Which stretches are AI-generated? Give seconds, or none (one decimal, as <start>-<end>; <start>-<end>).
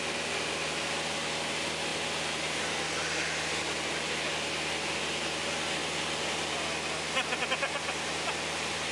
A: none